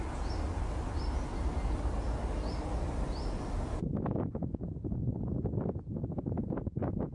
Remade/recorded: recorded